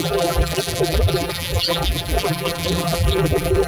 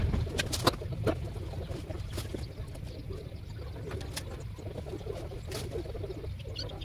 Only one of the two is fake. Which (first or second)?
first